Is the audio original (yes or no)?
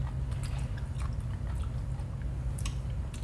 yes